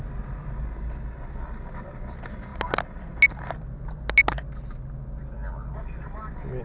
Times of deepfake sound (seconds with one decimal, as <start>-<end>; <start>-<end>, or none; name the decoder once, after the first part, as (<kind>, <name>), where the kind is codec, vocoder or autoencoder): none